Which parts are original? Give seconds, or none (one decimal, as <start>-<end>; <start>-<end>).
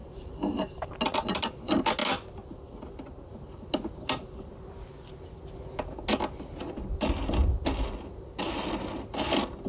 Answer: 0.9-9.7